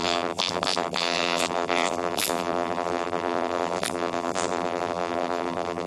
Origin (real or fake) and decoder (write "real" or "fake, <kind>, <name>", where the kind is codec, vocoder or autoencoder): fake, vocoder, BigVGAN v2